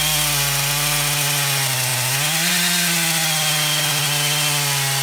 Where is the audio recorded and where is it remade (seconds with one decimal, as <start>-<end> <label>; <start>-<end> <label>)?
0.0-5.0 recorded